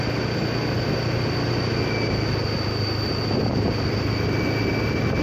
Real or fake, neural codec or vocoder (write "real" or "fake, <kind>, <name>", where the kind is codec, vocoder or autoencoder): real